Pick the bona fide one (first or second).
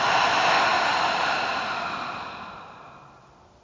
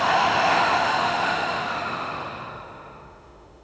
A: first